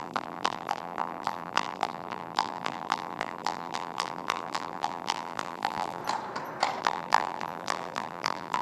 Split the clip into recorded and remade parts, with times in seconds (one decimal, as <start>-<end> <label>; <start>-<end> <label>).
0.0-6.0 remade; 6.0-6.8 recorded; 6.8-8.6 remade